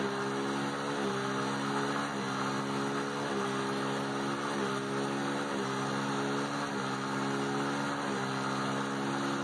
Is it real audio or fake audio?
real